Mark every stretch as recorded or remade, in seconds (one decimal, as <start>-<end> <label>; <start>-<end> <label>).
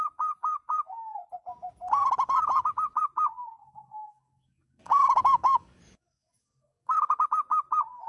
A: 0.0-3.6 recorded; 3.6-6.9 remade; 6.9-8.1 recorded